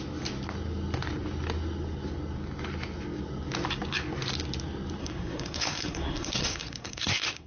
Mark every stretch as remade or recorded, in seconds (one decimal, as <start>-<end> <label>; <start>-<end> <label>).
0.0-5.0 recorded; 5.0-7.5 remade